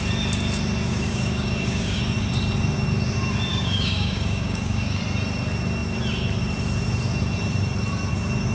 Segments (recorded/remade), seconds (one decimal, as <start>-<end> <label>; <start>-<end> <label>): 0.0-0.9 recorded; 0.9-2.0 remade; 2.0-3.5 recorded; 3.5-5.0 remade; 5.0-8.5 recorded